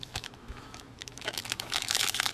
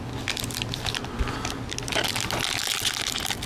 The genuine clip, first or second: second